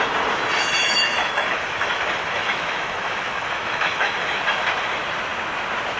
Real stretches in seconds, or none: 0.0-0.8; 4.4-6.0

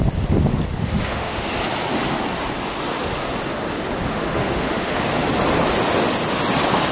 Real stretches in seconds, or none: 0.0-0.8; 1.5-4.1; 5.0-6.9

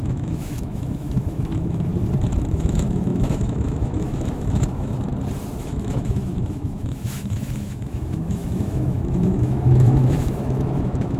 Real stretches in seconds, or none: 1.9-2.5; 5.1-5.6

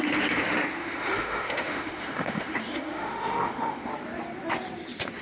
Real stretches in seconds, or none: 0.0-0.8; 3.9-5.2

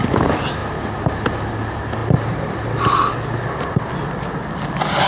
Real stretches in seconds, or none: 0.0-5.1

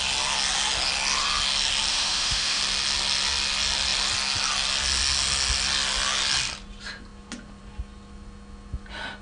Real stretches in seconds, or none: 0.0-1.9; 2.6-9.2